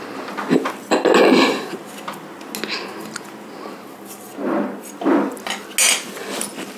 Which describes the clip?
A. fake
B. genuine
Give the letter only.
B